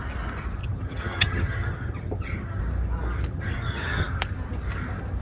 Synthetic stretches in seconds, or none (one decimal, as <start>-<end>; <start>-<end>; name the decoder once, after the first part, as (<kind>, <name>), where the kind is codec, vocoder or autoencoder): 0.6-2.6 (vocoder, HiFi-GAN); 3.3-4.2